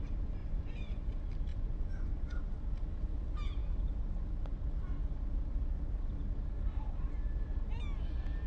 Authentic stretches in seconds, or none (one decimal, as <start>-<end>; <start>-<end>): 0.0-0.4; 1.1-1.5; 2.4-8.5